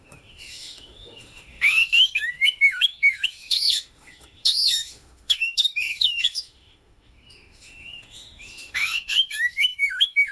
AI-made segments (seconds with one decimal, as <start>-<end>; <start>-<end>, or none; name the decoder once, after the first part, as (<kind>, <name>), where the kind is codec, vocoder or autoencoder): 0.0-10.3 (autoencoder, DAC-VAE)